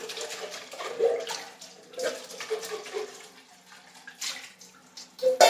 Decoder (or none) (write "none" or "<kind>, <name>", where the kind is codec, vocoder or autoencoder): none